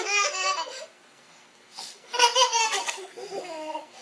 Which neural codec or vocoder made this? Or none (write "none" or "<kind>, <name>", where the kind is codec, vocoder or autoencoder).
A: codec, SNAC